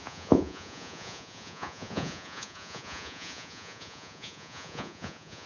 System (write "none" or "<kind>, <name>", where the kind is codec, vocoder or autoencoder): vocoder, Vocos